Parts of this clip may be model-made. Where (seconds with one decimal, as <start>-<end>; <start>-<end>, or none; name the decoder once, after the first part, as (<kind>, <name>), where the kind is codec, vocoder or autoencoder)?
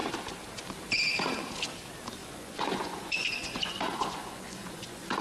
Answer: 2.2-5.2 (vocoder, Vocos)